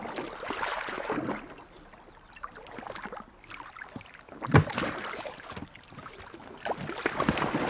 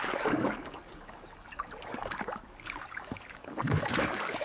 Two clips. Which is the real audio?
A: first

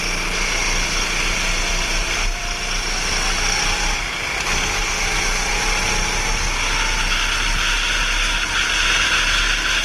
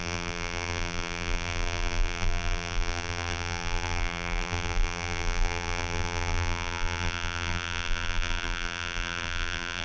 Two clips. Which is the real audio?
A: first